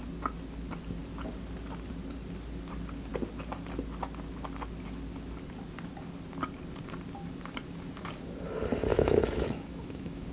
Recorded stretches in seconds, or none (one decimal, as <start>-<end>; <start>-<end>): 0.0-8.9